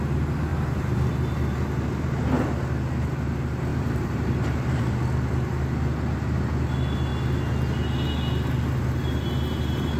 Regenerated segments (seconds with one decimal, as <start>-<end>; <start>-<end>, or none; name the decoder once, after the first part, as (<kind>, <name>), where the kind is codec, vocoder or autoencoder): 0.5-1.1 (vocoder, BigVGAN v2); 3.7-4.9